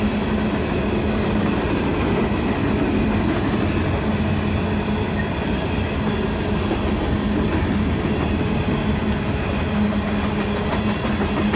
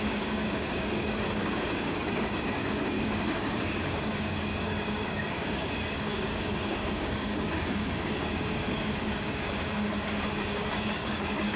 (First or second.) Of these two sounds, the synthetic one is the second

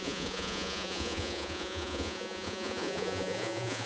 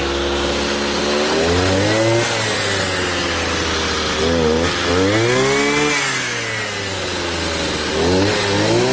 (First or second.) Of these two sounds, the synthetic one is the first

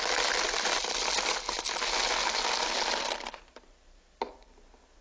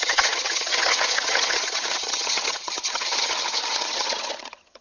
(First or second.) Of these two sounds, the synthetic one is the second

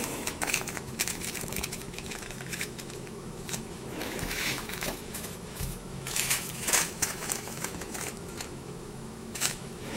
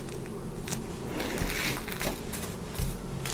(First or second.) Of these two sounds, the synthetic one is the first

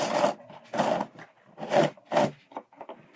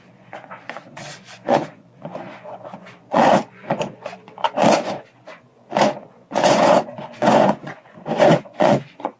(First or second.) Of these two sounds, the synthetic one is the second